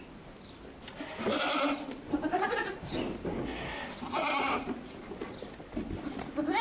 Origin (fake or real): real